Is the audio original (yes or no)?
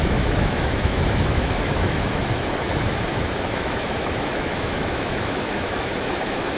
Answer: no